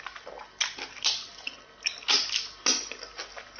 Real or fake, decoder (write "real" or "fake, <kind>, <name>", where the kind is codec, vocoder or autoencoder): real